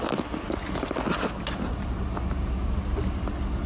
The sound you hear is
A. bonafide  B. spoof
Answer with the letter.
A